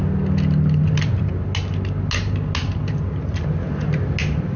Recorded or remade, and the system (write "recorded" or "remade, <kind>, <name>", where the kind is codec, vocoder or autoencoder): recorded